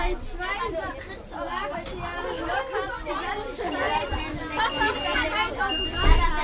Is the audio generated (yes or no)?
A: no